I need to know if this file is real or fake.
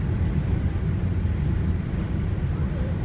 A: fake